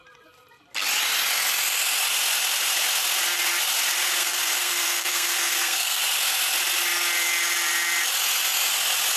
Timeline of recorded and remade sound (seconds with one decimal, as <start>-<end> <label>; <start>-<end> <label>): 0.0-4.2 recorded; 4.2-6.0 remade; 6.0-9.2 recorded